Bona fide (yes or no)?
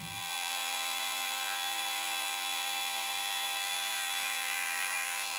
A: no